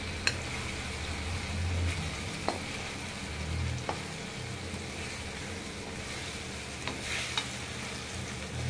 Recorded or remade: recorded